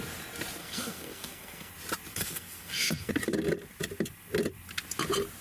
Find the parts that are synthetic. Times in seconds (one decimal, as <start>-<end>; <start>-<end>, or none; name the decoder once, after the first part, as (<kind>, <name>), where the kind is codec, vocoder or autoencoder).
0.6-1.7 (codec, SNAC); 2.1-3.1